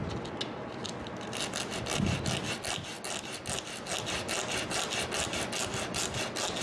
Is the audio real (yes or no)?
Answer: yes